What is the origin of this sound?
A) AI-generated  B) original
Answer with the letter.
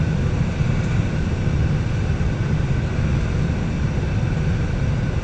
B